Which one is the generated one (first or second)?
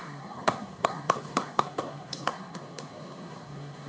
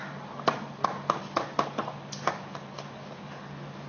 first